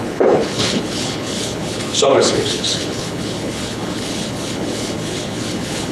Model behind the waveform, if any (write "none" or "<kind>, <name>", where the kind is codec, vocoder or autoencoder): codec, HILCodec